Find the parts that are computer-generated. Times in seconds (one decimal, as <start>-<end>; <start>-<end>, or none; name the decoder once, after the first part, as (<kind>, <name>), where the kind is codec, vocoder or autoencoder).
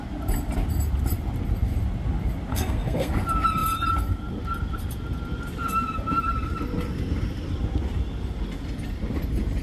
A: 2.5-3.1 (codec, SNAC)